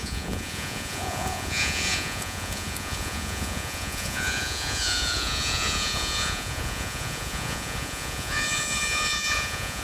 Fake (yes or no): yes